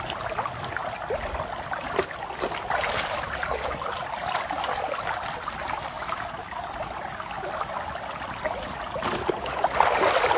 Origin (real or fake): real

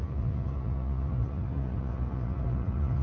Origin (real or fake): fake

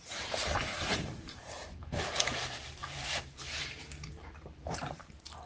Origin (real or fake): fake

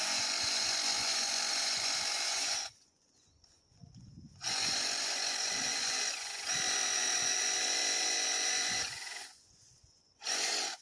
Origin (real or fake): fake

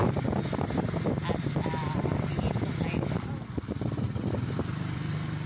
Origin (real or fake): real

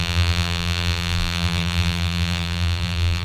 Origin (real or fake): fake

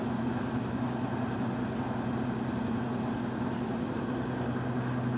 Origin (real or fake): real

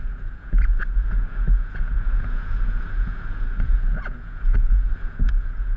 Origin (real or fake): fake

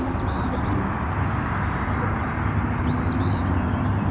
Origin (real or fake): real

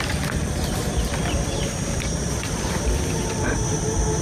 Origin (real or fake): fake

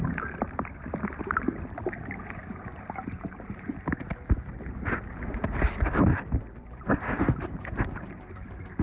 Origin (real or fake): real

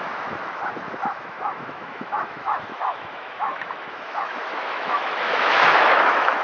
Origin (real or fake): fake